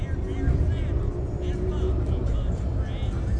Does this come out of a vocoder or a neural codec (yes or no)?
no